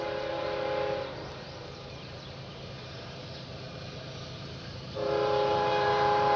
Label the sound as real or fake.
fake